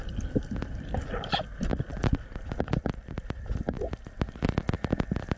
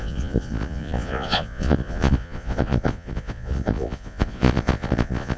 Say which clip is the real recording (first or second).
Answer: first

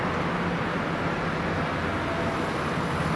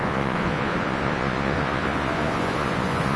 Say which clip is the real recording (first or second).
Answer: first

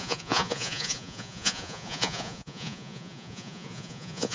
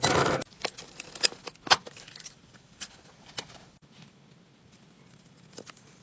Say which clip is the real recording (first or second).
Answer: second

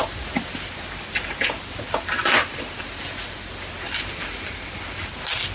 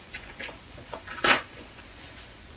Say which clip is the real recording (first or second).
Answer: first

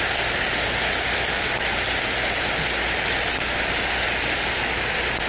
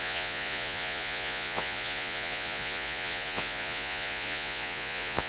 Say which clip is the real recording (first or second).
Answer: first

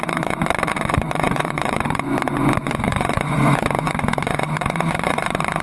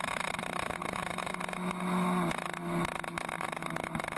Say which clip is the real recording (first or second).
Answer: second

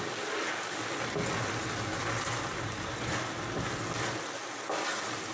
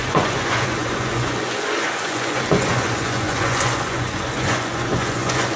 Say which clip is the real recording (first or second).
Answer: first